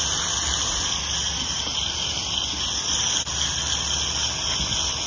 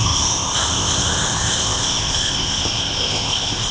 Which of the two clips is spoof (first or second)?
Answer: second